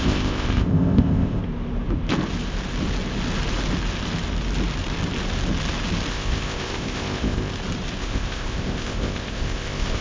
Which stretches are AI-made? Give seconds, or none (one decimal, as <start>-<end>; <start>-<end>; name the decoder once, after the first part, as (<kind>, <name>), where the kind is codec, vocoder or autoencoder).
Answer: 0.0-1.4 (codec, ZipCodec); 6.1-7.5; 8.0-10.0